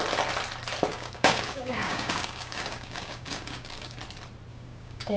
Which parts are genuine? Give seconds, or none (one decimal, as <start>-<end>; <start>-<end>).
0.0-0.9; 4.0-4.5